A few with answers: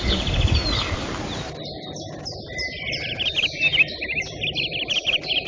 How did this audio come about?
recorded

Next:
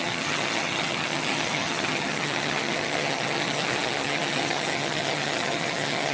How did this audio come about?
remade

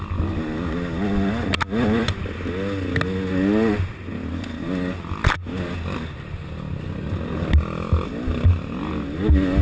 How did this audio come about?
recorded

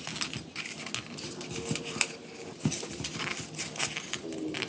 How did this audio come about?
recorded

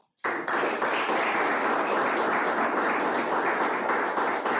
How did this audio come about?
recorded